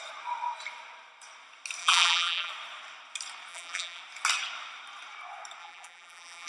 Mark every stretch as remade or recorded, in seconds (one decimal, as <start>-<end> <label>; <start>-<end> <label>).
0.0-1.8 recorded; 1.8-2.5 remade; 2.5-3.5 recorded; 3.5-4.0 remade; 4.0-5.6 recorded; 5.6-6.5 remade